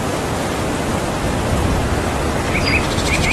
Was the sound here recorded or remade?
recorded